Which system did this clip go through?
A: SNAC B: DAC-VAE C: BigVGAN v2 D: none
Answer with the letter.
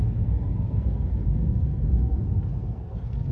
A